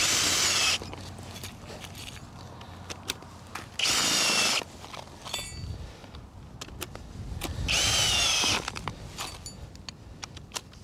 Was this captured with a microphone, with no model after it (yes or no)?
yes